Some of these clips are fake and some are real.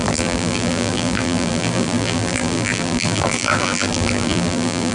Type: fake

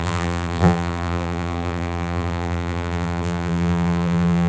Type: fake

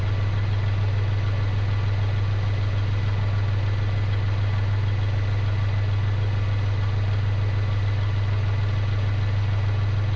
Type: real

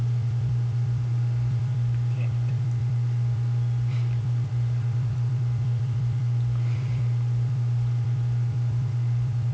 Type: fake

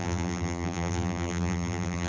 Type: fake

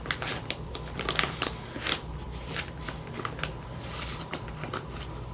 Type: fake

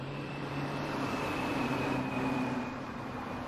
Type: fake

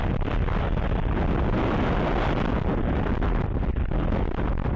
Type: real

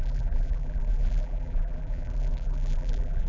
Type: fake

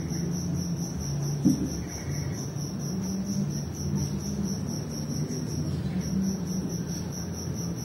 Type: real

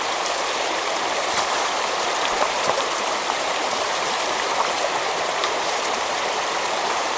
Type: fake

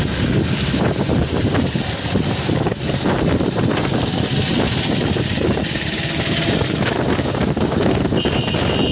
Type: fake